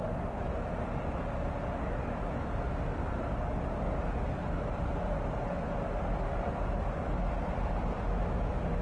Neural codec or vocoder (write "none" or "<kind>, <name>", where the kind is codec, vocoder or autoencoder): vocoder, BigVGAN v2